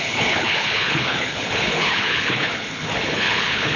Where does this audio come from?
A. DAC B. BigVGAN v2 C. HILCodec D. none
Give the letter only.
C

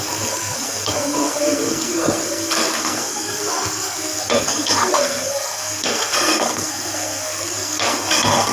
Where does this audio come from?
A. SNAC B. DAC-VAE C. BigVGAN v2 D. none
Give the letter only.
A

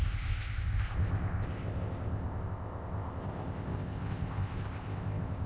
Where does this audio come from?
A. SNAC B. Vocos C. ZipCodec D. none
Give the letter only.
C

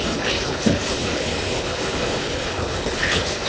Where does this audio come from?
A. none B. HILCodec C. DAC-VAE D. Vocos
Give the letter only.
B